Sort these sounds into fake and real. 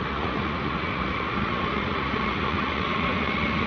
fake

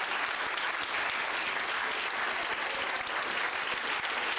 real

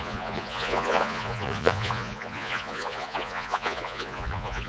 fake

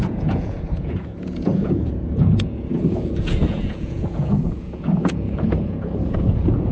fake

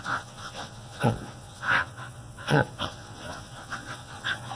fake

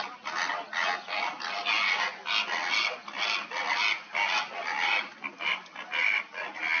real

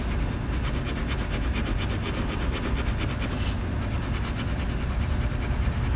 real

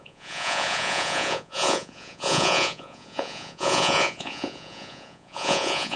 fake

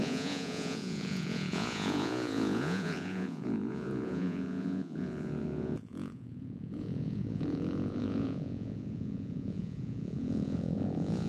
fake